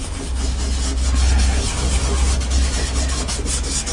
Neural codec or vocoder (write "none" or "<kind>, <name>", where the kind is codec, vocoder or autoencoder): none